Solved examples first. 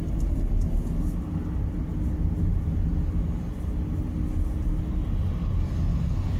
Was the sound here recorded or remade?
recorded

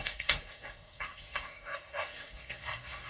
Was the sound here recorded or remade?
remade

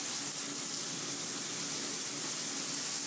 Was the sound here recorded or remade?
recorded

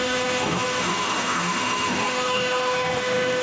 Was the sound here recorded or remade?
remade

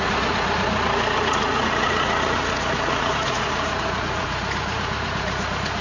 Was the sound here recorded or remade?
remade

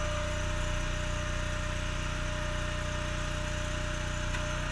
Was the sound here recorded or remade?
recorded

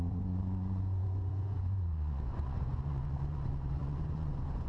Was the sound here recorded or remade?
remade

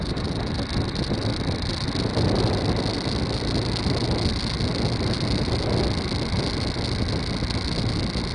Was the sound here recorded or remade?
recorded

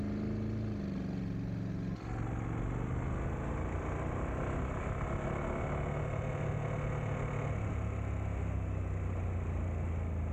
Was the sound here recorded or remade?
recorded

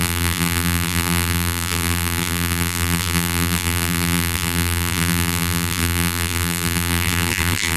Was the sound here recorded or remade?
remade